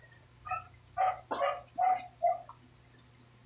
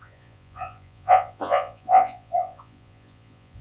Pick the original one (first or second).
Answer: first